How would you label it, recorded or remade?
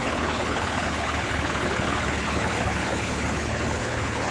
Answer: remade